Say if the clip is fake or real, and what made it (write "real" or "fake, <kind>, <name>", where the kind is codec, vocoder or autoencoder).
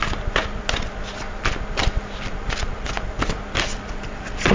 real